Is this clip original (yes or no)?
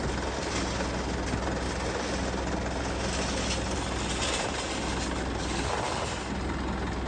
yes